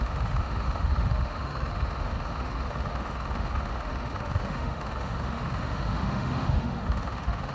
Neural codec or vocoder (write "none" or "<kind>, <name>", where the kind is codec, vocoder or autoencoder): autoencoder, DAC-VAE